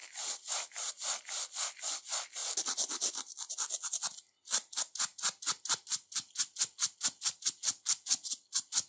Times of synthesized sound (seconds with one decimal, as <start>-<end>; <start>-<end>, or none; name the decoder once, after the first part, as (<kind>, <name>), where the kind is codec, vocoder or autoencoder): 0.0-0.9 (vocoder, BigVGAN v2)